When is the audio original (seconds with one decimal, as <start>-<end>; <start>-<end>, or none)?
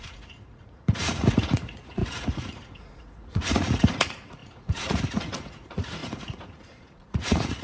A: none